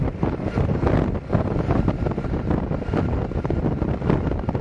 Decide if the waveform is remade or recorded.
recorded